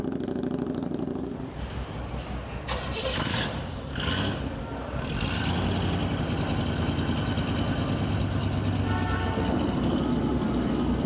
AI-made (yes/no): no